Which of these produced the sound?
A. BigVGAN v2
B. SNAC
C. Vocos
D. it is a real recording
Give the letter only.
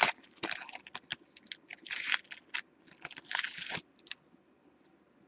D